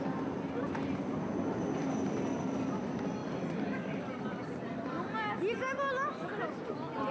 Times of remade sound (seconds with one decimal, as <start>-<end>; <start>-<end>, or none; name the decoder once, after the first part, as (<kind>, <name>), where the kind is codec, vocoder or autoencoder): none